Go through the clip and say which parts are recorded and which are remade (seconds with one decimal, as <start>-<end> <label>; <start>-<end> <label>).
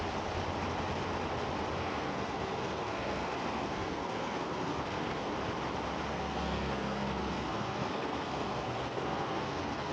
0.0-1.8 recorded; 1.8-5.3 remade; 5.3-6.1 recorded; 6.1-9.9 remade